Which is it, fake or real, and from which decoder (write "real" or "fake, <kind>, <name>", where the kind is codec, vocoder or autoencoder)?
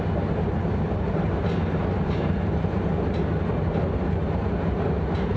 fake, vocoder, BigVGAN v2